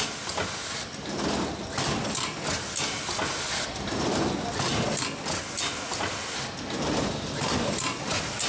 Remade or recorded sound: recorded